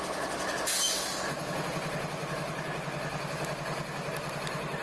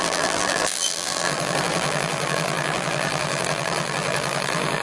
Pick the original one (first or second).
first